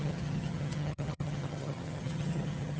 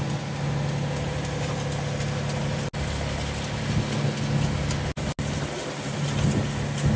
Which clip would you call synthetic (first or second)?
first